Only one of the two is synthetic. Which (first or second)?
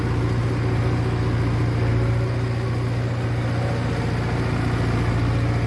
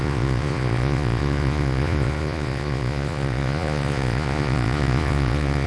second